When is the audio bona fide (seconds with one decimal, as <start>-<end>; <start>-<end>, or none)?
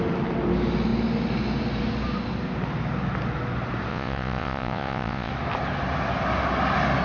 0.0-3.9; 5.3-7.0